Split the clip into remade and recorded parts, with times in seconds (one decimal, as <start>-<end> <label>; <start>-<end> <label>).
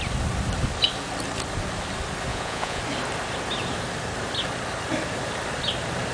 0.0-2.3 recorded; 2.3-2.8 remade; 2.8-6.1 recorded